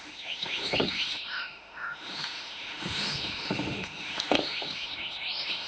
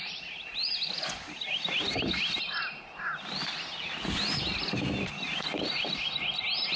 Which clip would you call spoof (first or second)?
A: first